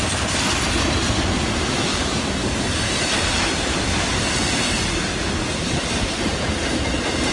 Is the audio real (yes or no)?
yes